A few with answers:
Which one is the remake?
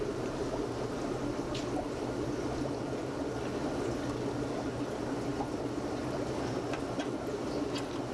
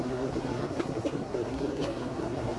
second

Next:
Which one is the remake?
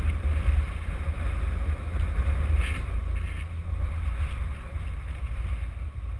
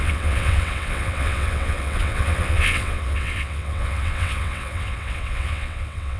second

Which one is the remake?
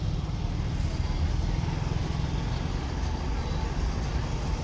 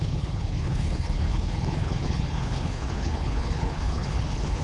second